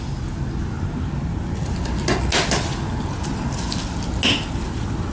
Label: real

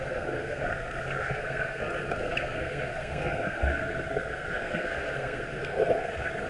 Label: fake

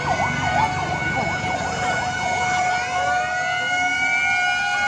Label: real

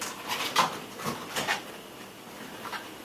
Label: real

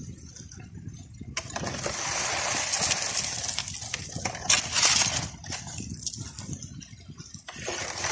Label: real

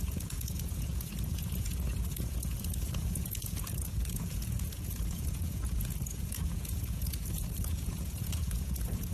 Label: fake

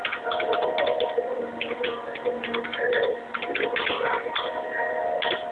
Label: real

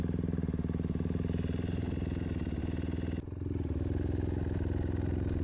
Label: real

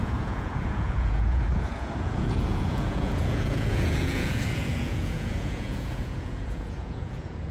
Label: fake